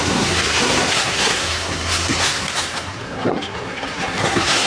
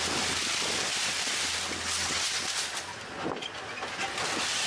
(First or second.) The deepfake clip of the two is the first